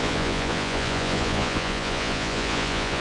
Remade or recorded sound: remade